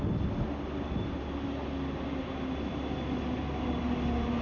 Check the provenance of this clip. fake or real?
real